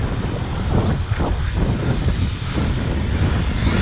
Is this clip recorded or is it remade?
recorded